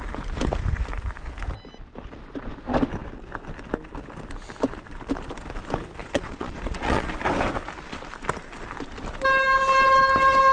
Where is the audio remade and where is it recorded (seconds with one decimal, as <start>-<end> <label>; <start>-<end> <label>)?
0.0-6.0 recorded; 6.0-7.1 remade; 7.1-10.5 recorded